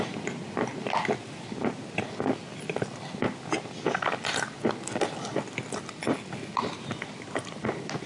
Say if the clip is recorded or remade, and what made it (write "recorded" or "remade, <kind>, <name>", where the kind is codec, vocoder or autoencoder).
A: recorded